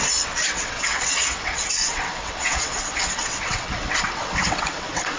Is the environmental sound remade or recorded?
remade